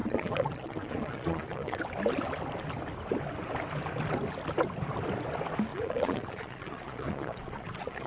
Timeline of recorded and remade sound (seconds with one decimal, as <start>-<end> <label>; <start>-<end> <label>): 0.0-1.8 remade; 1.8-5.7 recorded; 5.7-8.1 remade